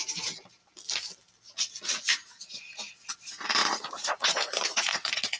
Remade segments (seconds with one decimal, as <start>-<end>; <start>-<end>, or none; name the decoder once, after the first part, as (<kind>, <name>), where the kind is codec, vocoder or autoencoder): 2.1-5.4 (vocoder, Vocos)